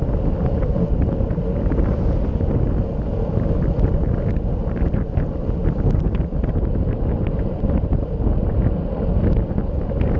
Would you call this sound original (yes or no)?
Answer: yes